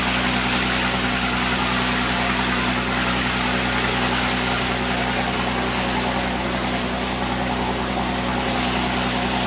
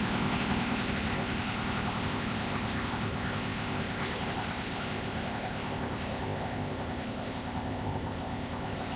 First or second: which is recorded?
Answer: first